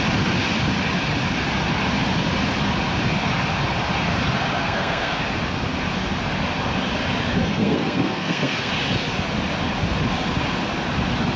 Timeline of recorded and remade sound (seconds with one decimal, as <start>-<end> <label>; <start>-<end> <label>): 0.0-4.6 recorded; 4.6-5.2 remade; 5.2-7.4 recorded; 7.4-8.7 remade; 8.7-11.4 recorded